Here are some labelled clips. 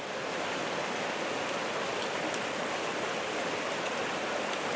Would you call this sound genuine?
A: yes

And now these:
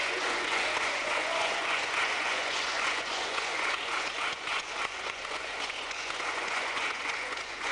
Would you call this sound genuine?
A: no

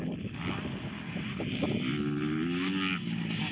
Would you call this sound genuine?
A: yes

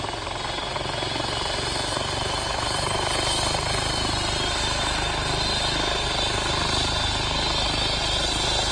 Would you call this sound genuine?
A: yes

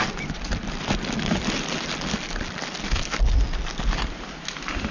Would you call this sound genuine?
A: yes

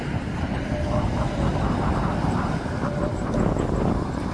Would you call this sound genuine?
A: yes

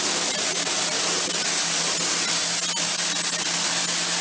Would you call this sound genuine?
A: yes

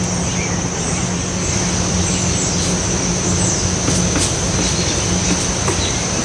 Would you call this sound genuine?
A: yes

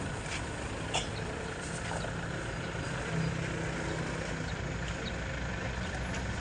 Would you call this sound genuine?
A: yes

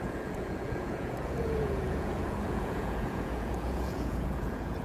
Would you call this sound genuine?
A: no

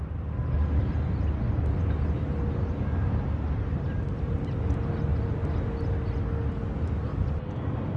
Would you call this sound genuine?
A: yes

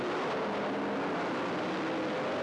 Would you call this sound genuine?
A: yes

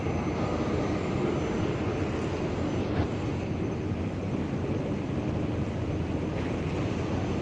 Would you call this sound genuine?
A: yes